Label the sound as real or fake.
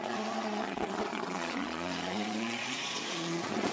fake